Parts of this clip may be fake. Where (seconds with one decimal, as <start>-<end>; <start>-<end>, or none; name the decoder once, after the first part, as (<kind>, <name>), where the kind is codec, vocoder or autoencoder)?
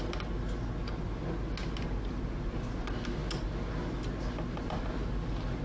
none